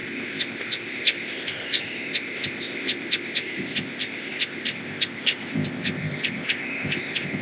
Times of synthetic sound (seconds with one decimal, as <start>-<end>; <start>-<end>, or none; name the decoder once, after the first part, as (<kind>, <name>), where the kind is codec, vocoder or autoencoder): 0.0-7.4 (codec, ZipCodec)